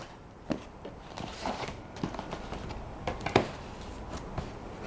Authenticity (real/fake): real